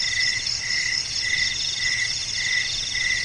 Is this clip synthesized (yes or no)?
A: no